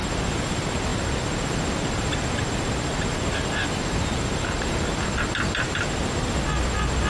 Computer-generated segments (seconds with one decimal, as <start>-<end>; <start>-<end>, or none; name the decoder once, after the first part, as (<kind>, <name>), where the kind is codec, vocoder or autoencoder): none